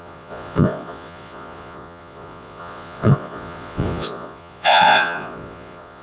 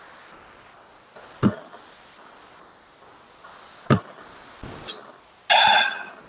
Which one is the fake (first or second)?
first